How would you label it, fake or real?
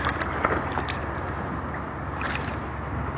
real